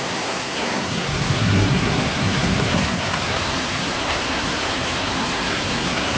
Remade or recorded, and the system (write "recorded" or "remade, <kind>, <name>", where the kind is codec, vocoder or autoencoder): remade, codec, SNAC